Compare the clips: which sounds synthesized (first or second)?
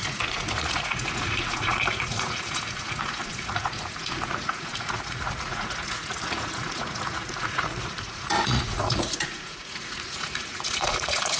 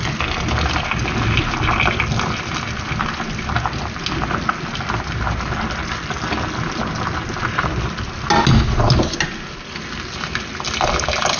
first